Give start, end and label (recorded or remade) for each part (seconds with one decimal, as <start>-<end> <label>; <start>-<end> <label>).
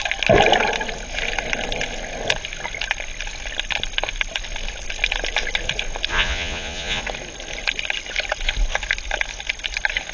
0.0-6.1 recorded; 6.1-7.0 remade; 7.0-10.1 recorded